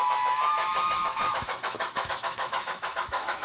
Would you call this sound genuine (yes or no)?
no